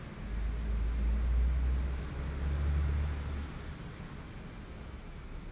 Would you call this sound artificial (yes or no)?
no